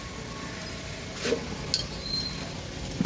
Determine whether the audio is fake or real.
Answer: real